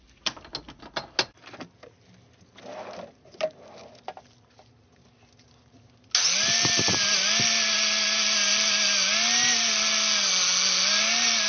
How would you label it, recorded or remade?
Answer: recorded